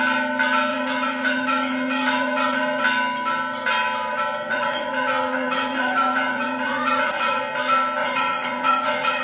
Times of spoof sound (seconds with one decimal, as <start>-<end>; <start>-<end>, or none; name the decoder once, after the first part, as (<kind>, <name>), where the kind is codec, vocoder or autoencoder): 0.7-2.8 (vocoder, Vocos); 4.5-7.4; 8.0-9.2

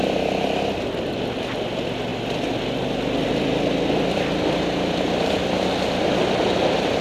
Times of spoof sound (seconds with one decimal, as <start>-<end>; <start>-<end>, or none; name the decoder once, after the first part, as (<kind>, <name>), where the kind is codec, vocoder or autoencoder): none

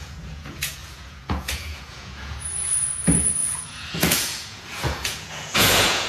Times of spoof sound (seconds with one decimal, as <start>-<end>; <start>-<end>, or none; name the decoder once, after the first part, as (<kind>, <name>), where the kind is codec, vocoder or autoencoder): 0.0-6.1 (vocoder, Vocos)

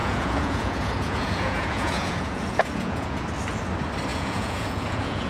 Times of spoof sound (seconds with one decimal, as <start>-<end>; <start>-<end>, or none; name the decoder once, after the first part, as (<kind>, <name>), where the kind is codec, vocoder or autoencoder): 0.0-3.2 (vocoder, Vocos); 4.1-5.3

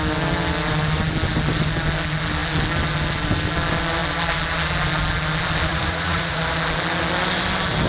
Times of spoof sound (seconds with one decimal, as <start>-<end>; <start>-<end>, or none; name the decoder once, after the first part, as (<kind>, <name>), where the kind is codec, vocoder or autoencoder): 5.7-6.4 (vocoder, Vocos)

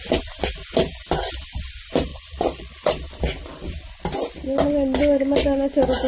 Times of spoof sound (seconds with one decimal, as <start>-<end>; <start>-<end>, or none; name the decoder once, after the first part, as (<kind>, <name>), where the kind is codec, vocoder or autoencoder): 2.1-2.9 (vocoder, Vocos)